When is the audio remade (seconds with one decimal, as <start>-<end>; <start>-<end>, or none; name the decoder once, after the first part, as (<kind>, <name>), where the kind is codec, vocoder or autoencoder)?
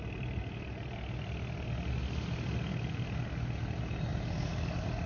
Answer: none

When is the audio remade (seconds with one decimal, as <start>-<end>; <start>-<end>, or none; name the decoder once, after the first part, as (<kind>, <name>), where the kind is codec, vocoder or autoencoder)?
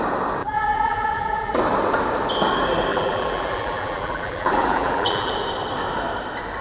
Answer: 0.4-1.6 (vocoder, BigVGAN v2); 2.9-5.3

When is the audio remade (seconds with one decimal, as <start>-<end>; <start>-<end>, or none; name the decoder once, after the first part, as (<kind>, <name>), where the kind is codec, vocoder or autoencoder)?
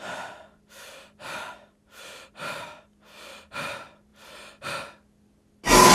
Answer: none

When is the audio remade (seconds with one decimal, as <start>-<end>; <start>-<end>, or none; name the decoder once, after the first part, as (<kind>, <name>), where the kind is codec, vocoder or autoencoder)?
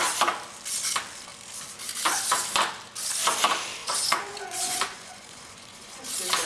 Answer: 3.8-6.0 (vocoder, Vocos)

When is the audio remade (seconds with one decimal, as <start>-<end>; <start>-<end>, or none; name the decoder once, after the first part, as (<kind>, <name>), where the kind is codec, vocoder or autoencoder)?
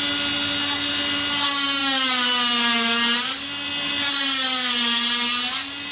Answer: none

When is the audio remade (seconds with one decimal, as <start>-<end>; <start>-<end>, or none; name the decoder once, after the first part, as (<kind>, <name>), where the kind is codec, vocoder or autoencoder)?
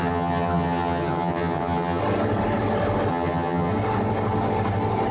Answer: 0.0-2.0 (vocoder, HiFi-GAN); 3.1-3.7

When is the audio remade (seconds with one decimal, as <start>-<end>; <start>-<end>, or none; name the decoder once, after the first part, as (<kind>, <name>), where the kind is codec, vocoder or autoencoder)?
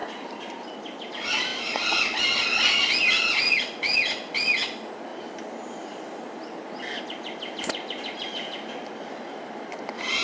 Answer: none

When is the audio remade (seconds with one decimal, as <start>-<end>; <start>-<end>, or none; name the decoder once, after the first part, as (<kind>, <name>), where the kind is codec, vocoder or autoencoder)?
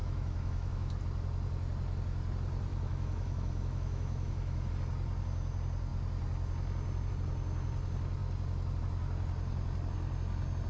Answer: 0.0-1.0 (autoencoder, DAC-VAE); 2.7-4.7